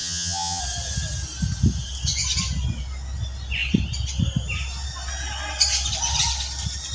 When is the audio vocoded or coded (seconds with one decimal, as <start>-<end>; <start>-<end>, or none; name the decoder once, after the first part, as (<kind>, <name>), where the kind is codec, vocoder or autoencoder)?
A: 0.0-0.6 (vocoder, HiFi-GAN)